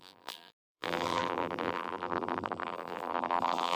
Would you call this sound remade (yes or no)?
yes